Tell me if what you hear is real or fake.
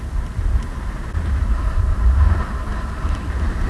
real